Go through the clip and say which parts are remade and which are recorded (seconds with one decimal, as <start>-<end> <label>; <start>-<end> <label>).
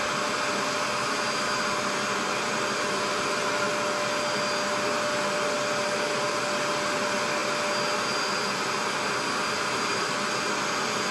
0.0-11.1 recorded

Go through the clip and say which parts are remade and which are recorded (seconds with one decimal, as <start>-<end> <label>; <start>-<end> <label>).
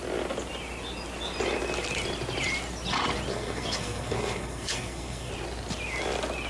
0.0-3.3 recorded; 3.3-5.3 remade; 5.3-6.5 recorded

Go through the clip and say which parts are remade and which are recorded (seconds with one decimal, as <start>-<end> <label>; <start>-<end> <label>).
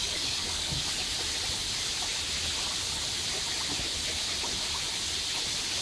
0.0-0.9 remade; 0.9-5.8 recorded